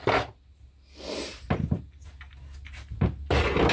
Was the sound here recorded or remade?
recorded